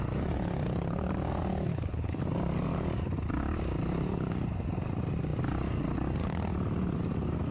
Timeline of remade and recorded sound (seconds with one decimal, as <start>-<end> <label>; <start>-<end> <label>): 0.0-1.7 recorded; 1.7-2.2 remade; 2.2-7.5 recorded